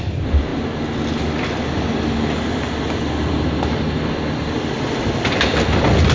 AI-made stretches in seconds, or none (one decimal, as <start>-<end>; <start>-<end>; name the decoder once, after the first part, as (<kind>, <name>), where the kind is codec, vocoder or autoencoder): none